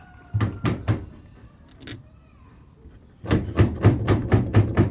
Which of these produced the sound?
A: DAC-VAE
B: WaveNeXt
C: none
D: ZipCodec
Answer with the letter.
C